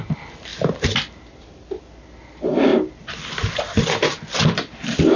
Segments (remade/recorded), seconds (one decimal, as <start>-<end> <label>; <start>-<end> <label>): 0.0-2.7 recorded; 2.7-4.2 remade; 4.2-5.2 recorded